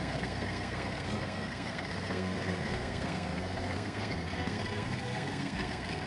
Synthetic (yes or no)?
yes